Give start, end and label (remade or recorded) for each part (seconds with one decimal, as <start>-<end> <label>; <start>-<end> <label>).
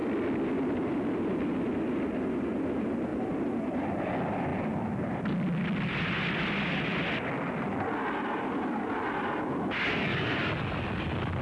0.0-1.4 remade; 1.4-3.1 recorded; 3.1-4.1 remade; 4.1-11.4 recorded